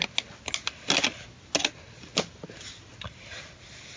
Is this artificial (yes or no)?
no